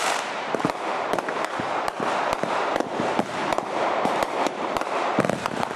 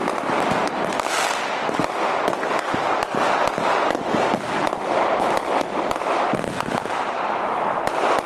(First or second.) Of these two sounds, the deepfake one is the first